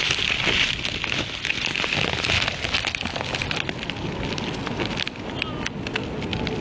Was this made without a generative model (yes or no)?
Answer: yes